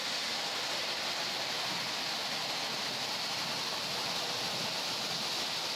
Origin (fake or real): real